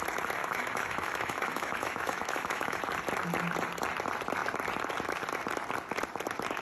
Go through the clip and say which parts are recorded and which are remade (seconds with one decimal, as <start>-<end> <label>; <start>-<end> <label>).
0.0-0.4 recorded; 0.4-2.8 remade; 2.8-6.6 recorded